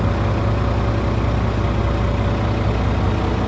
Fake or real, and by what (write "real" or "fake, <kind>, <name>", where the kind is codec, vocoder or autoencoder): real